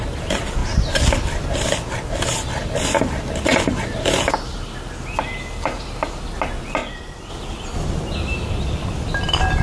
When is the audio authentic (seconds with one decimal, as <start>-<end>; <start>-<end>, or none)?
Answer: 0.0-9.6